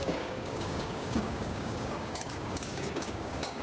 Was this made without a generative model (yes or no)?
no